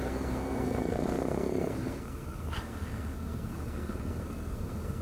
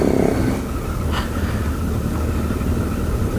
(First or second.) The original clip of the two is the second